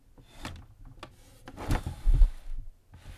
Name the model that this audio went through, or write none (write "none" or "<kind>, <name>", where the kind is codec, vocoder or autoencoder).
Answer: none